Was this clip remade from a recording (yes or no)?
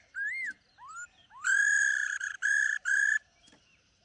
yes